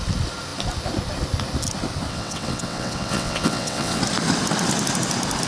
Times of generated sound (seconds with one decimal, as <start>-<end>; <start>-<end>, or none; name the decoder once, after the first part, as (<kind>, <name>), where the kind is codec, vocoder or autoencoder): 2.1-4.0 (vocoder, WaveNeXt)

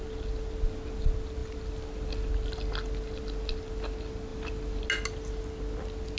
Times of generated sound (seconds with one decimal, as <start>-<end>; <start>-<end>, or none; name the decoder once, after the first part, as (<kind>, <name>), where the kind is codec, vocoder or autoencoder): none

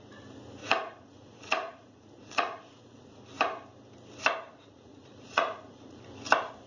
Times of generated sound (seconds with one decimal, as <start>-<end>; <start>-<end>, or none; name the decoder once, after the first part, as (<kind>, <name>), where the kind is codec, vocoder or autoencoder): 0.6-3.2 (vocoder, Vocos); 4.5-6.0

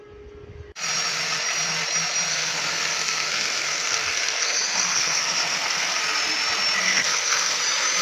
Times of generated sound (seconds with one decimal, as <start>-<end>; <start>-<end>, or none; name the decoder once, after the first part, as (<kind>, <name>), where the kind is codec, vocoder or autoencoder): 2.3-6.0 (codec, SNAC); 6.8-7.6

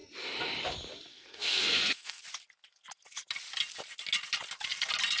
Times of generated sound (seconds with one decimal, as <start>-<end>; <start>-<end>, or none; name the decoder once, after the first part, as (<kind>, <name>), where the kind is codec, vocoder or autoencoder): 1.1-2.2 (codec, SNAC)

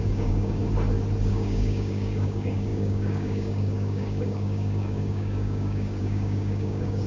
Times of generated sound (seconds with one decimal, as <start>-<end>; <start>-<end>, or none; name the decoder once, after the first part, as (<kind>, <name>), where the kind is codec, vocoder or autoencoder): 0.0-0.6 (codec, DAC); 1.3-7.1

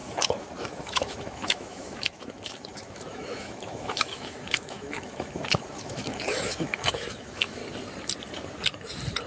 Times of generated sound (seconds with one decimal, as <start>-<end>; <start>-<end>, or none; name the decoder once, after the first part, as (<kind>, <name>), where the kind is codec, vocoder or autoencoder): 0.0-7.6 (autoencoder, DAC-VAE)

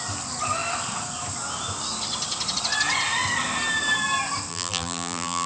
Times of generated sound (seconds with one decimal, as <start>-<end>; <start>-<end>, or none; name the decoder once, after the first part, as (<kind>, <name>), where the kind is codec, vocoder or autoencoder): 4.5-5.5 (vocoder, BigVGAN v2)